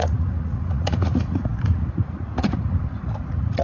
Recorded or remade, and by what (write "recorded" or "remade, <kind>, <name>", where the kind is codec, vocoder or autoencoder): remade, vocoder, Vocos